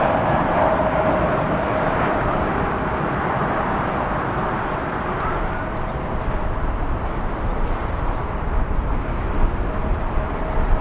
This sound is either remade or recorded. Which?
remade